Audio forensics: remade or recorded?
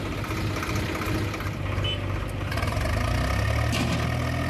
recorded